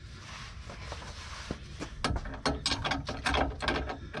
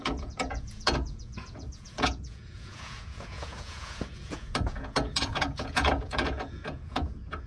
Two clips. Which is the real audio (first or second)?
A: first